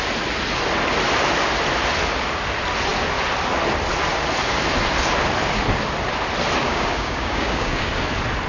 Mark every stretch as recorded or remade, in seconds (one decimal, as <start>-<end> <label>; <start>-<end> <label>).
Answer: 0.0-6.6 recorded; 6.6-7.9 remade; 7.9-8.5 recorded